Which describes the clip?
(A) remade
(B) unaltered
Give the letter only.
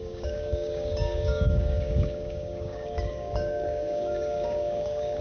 A